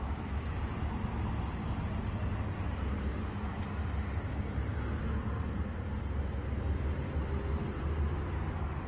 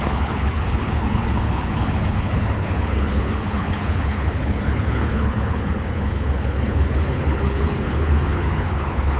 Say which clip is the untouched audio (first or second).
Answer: first